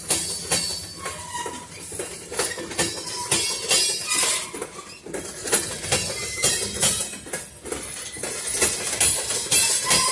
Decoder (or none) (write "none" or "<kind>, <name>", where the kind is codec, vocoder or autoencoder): none